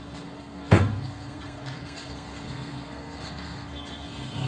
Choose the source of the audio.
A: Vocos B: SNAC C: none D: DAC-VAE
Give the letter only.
B